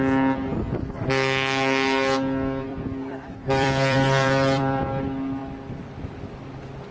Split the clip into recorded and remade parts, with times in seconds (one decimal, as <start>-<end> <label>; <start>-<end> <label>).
0.0-2.7 recorded; 2.7-4.8 remade; 4.8-6.9 recorded